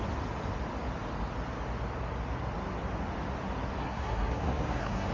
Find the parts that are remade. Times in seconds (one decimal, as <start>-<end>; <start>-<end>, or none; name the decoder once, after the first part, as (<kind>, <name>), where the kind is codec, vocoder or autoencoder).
3.8-5.1 (codec, SNAC)